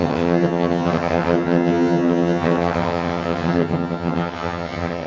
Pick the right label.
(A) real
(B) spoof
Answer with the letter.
B